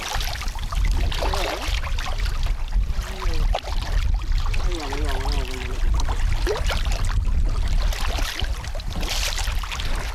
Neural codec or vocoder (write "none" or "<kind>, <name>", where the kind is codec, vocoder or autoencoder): none